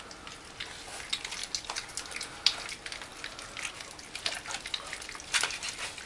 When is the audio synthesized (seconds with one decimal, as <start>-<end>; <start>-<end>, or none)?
none